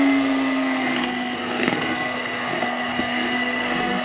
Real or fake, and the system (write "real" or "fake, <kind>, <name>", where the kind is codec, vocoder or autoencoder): fake, codec, SNAC